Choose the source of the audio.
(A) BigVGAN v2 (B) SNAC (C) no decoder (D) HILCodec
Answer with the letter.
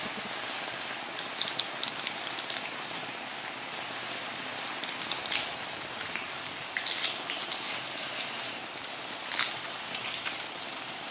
A